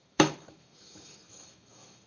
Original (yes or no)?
no